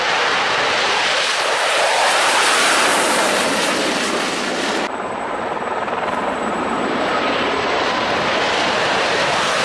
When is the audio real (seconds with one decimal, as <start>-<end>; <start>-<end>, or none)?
none